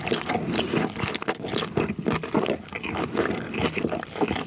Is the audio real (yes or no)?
yes